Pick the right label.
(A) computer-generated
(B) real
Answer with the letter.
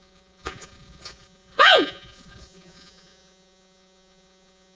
A